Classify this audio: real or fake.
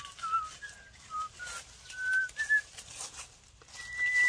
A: real